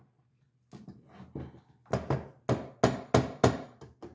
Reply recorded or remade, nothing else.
recorded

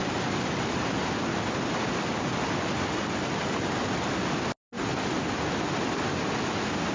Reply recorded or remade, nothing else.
recorded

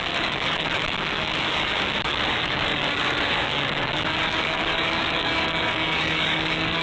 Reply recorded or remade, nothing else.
remade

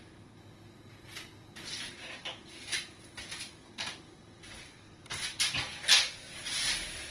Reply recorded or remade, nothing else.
recorded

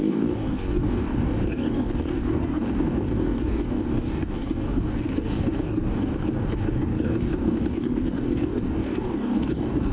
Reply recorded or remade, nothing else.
remade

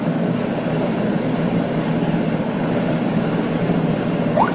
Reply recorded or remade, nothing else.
remade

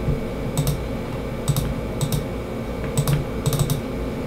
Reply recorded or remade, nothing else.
recorded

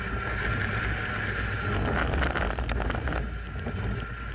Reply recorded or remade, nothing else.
recorded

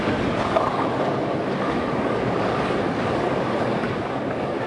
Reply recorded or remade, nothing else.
remade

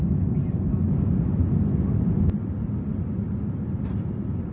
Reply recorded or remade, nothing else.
recorded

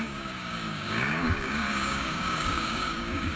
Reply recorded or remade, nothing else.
remade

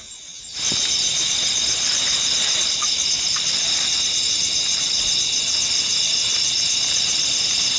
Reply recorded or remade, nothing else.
recorded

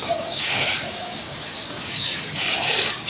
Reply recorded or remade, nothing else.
remade